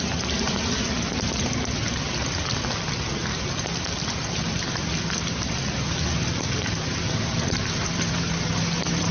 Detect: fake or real real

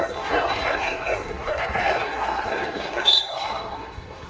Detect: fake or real fake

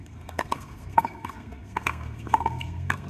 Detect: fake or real fake